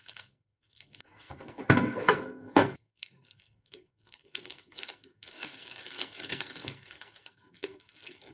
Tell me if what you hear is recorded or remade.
remade